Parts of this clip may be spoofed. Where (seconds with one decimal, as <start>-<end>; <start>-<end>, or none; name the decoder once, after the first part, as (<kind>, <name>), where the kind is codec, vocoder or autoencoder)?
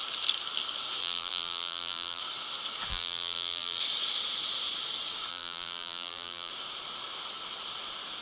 1.0-2.2 (vocoder, BigVGAN v2); 2.9-3.8; 5.3-6.5